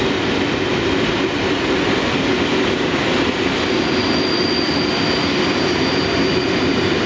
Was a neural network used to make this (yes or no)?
no